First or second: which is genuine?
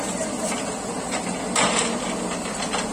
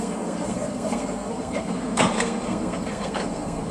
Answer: first